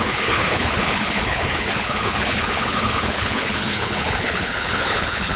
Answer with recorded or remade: remade